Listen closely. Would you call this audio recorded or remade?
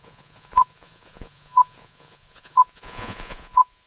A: remade